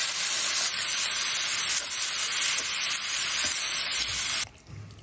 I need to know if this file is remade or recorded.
recorded